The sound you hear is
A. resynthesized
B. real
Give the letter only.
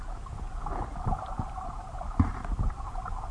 B